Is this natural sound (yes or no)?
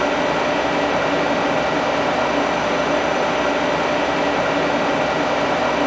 yes